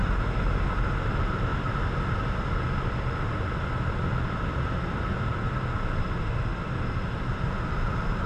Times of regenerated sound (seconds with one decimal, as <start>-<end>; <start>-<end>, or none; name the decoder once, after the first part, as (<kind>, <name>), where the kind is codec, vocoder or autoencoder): 1.1-1.5 (vocoder, BigVGAN v2); 5.7-6.5